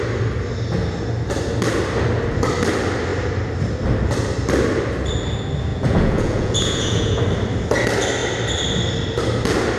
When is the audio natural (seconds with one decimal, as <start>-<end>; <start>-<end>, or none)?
0.0-5.7; 7.2-9.8